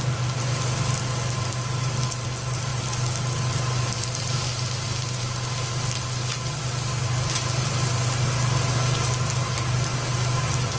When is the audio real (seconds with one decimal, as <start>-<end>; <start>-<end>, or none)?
0.0-10.8